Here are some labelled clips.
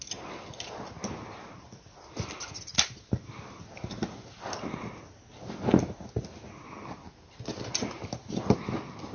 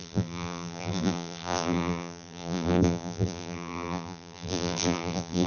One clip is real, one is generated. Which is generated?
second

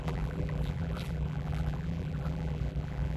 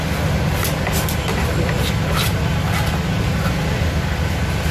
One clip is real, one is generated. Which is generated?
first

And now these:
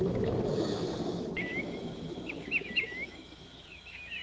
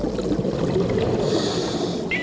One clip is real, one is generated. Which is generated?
first